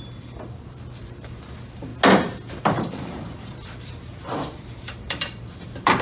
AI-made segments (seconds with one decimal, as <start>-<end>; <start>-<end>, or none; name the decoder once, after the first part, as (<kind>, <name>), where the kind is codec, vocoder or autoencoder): 0.0-1.9 (vocoder, BigVGAN v2); 2.6-6.0